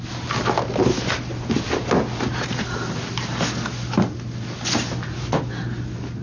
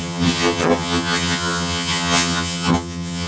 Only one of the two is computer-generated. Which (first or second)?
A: second